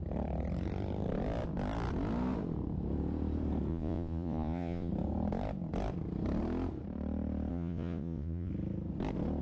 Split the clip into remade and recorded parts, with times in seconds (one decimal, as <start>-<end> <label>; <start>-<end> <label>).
0.0-3.7 recorded; 3.7-4.9 remade; 4.9-7.5 recorded; 7.5-8.5 remade; 8.5-9.4 recorded